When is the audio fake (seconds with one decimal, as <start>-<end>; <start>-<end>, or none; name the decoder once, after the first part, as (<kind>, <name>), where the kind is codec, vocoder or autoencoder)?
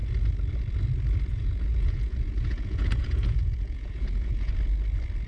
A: 1.3-4.5 (vocoder, Vocos)